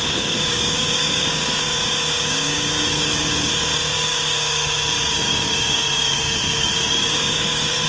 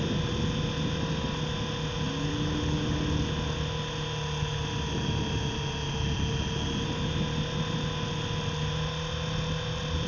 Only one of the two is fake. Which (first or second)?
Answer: first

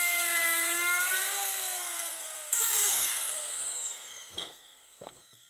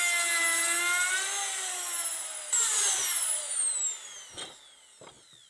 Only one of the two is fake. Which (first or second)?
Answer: first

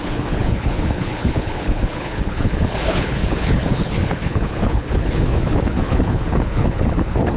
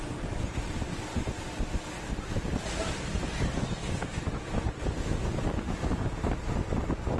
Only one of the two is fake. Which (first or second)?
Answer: first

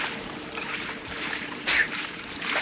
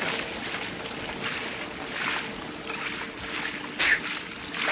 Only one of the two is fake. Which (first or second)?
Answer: first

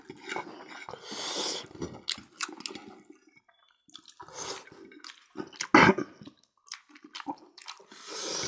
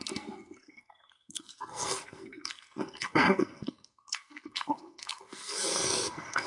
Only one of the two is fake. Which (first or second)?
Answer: second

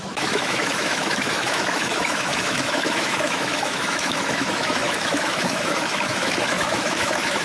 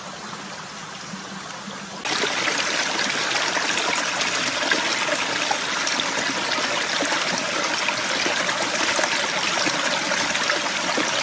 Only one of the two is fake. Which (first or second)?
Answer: first